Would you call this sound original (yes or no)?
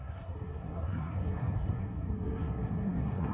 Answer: no